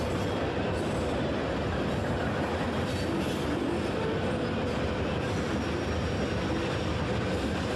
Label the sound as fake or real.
real